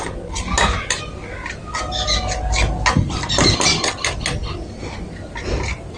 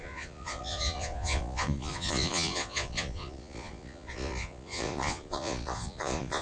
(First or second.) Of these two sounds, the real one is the first